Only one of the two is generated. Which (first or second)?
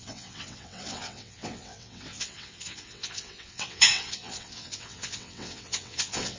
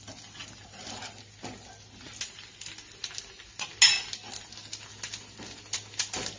first